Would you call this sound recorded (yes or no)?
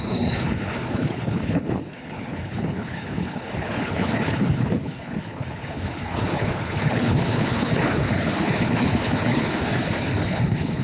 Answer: no